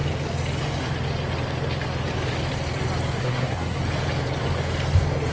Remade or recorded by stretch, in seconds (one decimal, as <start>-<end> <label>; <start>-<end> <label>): 0.0-3.2 recorded; 3.2-3.8 remade; 3.8-5.3 recorded